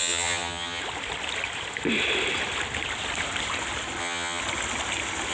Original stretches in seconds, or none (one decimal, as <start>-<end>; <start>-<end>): 0.8-4.0; 4.4-5.3